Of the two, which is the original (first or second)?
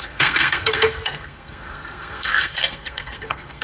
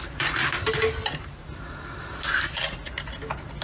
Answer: second